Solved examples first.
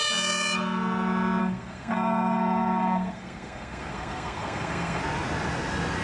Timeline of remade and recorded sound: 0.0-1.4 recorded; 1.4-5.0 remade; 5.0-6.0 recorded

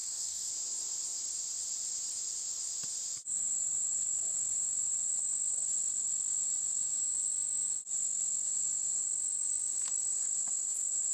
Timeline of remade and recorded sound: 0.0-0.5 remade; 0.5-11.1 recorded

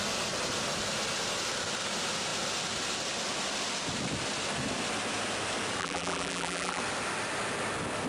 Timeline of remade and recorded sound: 0.0-5.8 recorded; 5.8-6.8 remade; 6.8-8.1 recorded

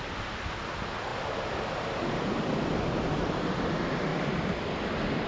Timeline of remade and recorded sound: 0.0-5.3 recorded